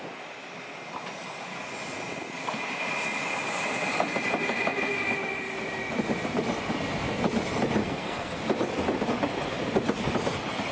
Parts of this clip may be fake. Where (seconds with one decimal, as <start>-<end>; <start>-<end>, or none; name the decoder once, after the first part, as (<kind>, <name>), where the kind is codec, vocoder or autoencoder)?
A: 7.8-8.4 (codec, SNAC)